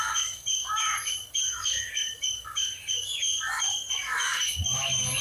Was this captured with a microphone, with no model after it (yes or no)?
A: no